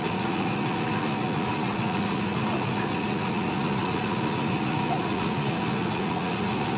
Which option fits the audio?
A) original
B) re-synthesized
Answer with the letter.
B